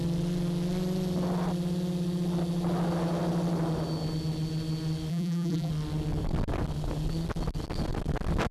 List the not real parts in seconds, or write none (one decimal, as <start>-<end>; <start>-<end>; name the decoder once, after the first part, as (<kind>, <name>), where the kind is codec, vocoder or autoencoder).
5.1-5.7 (vocoder, BigVGAN v2)

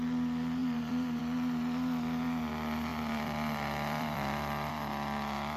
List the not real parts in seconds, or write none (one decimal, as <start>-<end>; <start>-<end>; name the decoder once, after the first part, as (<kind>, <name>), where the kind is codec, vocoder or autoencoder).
0.6-1.2 (vocoder, BigVGAN v2); 2.9-4.7

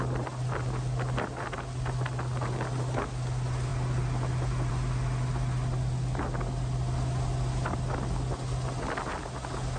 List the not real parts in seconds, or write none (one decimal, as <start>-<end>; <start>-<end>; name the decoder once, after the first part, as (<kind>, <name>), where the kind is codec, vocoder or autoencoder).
none

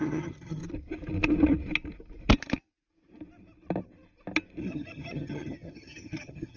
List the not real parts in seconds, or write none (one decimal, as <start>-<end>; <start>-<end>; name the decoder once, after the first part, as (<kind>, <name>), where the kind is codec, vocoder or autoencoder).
0.0-0.6 (vocoder, HiFi-GAN); 4.6-6.6

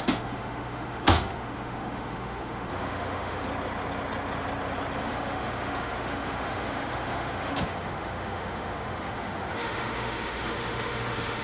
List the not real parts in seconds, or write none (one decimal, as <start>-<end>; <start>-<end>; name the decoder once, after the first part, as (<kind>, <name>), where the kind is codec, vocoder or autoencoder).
0.0-3.4 (autoencoder, DAC-VAE); 5.0-11.4

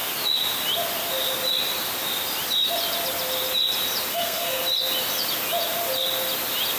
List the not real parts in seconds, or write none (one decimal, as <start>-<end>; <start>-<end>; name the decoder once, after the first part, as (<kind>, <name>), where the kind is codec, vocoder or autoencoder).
4.1-4.6 (codec, SNAC)

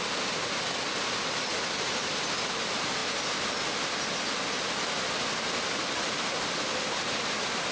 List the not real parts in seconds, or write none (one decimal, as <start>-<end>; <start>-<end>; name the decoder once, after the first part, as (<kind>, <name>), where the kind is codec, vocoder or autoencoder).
none